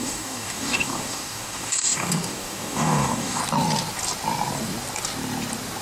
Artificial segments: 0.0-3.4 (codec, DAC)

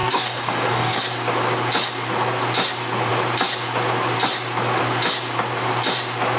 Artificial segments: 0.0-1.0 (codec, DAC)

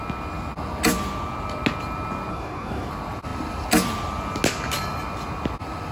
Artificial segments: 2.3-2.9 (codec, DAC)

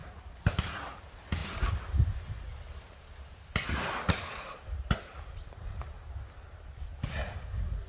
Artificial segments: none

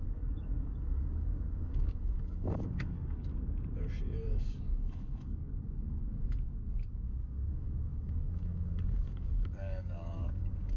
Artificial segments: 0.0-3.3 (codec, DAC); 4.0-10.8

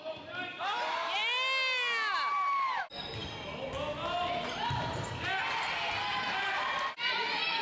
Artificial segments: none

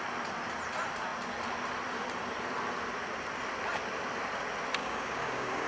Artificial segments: 4.8-5.7 (codec, DAC)

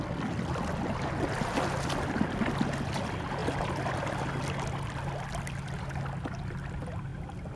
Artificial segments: none